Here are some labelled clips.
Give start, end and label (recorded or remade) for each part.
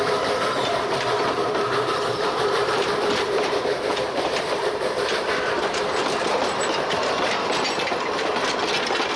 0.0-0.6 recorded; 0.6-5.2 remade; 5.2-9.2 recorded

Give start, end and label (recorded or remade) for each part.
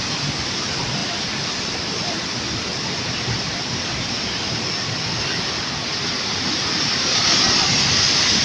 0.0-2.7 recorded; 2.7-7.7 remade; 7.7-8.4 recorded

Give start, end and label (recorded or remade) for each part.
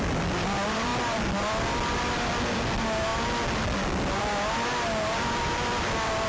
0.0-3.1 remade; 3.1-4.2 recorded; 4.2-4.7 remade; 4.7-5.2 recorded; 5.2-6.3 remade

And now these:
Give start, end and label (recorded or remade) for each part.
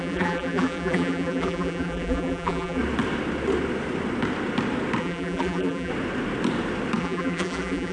0.0-2.8 remade; 2.8-5.0 recorded; 5.0-5.9 remade; 5.9-7.0 recorded; 7.0-7.9 remade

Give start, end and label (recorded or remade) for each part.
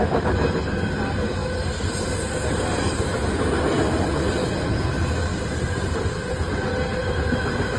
0.0-5.3 recorded; 5.3-6.5 remade; 6.5-7.8 recorded